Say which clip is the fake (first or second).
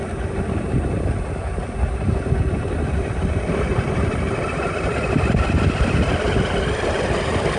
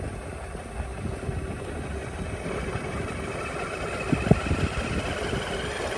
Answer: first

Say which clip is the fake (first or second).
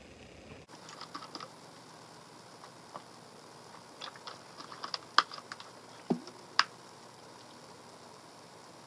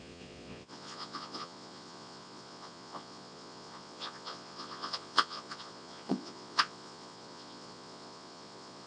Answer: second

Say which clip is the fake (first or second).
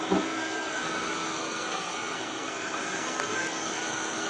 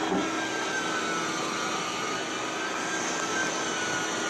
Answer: first